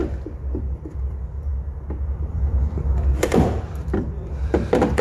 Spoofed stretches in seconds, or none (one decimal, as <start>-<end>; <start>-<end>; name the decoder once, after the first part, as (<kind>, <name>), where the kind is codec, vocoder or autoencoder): 0.0-5.0 (vocoder, BigVGAN v2)